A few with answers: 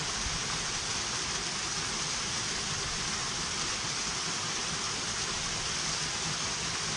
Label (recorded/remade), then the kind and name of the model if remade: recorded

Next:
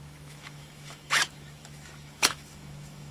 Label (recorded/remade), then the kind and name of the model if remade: remade, autoencoder, DAC-VAE